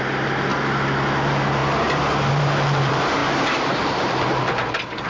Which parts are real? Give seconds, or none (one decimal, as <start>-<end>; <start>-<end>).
0.5-1.2; 1.6-2.3